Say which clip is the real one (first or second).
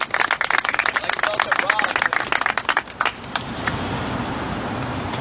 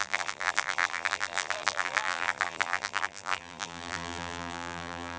first